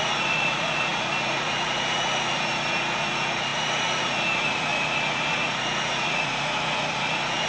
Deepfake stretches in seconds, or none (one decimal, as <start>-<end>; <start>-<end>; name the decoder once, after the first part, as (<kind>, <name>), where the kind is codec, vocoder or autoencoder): 0.0-7.5 (vocoder, Vocos)